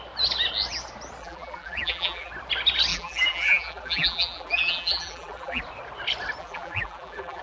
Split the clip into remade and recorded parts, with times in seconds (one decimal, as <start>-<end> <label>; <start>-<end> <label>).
0.0-1.2 recorded; 1.2-2.3 remade; 2.3-2.9 recorded; 2.9-5.6 remade; 5.6-6.4 recorded; 6.4-7.4 remade